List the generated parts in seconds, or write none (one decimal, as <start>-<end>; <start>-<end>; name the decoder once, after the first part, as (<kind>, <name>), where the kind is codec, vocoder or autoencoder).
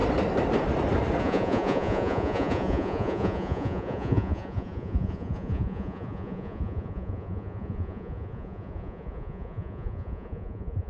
1.2-10.9 (vocoder, Vocos)